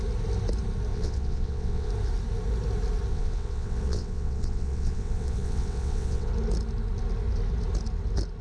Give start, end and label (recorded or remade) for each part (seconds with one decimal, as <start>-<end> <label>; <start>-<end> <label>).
0.0-0.9 recorded; 0.9-1.9 remade; 1.9-3.1 recorded; 3.1-6.3 remade; 6.3-8.4 recorded